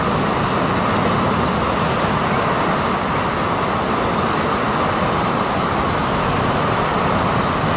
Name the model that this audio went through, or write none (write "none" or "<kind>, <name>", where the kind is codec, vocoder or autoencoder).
none